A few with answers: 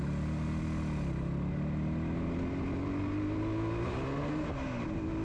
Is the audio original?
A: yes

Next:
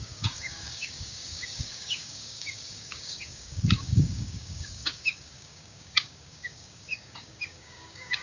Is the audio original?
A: no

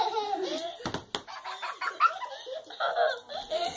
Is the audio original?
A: yes